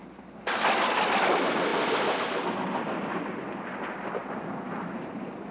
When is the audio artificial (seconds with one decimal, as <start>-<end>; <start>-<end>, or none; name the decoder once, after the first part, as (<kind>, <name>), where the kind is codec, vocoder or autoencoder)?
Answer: none